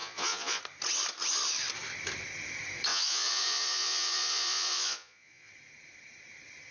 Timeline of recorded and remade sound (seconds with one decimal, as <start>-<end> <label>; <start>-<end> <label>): 0.0-0.6 remade; 0.6-2.9 recorded; 2.9-5.5 remade; 5.5-6.7 recorded